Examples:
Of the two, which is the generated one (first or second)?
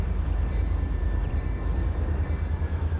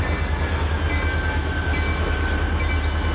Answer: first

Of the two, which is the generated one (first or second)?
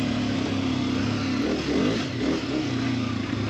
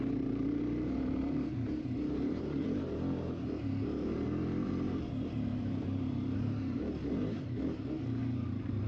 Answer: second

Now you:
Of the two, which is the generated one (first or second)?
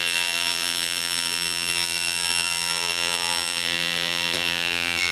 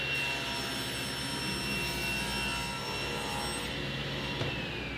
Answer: first